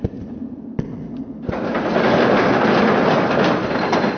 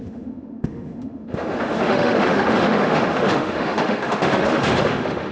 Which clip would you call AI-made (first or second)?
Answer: second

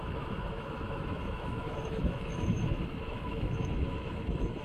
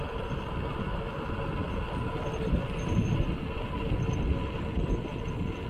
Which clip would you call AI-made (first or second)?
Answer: first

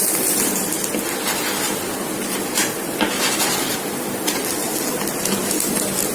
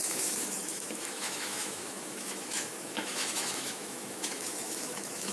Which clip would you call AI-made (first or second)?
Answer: second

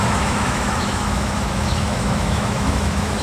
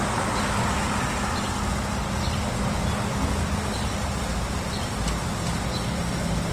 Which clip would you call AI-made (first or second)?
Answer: first